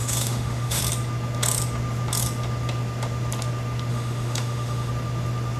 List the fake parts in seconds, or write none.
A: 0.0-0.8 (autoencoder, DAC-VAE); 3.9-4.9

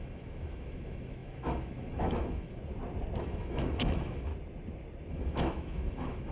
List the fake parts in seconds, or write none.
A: 0.0-2.6 (autoencoder, DAC-VAE); 3.2-4.3; 5.1-6.3

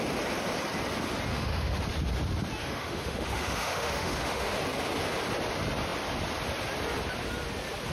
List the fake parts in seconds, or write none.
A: 1.3-1.8 (autoencoder, DAC-VAE); 2.6-4.5

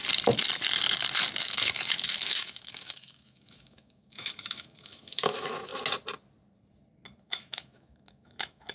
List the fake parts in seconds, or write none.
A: 1.4-5.7 (autoencoder, DAC-VAE); 7.2-8.7

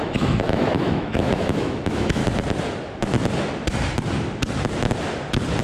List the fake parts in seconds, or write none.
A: 0.0-2.2 (autoencoder, DAC-VAE)

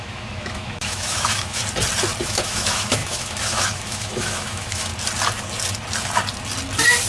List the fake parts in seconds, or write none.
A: 0.0-1.6 (autoencoder, DAC-VAE); 2.2-4.9

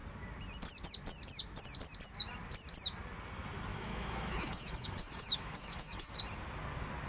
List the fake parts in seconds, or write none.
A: 3.7-6.2 (autoencoder, DAC-VAE)